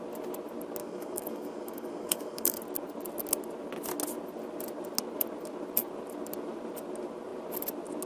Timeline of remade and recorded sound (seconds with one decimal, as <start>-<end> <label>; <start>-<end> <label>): 0.0-0.8 recorded; 0.8-2.6 remade; 2.6-8.1 recorded